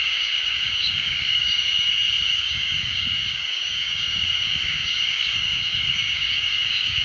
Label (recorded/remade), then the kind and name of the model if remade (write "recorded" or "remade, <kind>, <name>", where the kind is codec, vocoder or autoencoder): remade, codec, DAC